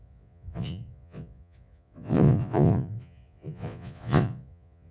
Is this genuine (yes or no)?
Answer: no